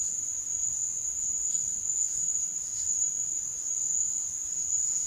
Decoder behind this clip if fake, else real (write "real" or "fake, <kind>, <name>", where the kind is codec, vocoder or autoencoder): real